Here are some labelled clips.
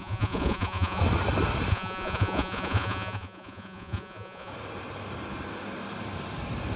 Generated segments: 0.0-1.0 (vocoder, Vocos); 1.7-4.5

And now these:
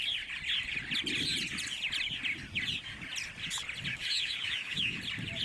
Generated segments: 3.9-5.0 (autoencoder, DAC-VAE)

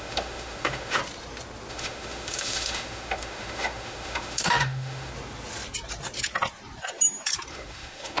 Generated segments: 0.0-1.0 (autoencoder, DAC-VAE); 1.7-5.1; 7.5-8.2

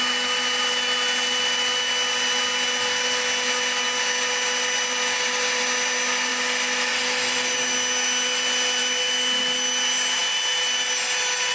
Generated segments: none